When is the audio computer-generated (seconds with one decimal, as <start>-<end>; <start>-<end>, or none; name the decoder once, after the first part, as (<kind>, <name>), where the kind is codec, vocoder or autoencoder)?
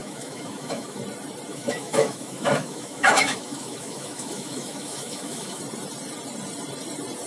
0.0-1.0 (autoencoder, DAC-VAE); 1.5-5.6